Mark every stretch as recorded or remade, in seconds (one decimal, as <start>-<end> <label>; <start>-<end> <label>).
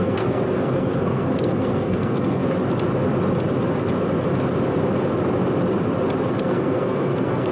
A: 0.0-2.4 remade; 2.4-6.3 recorded; 6.3-7.5 remade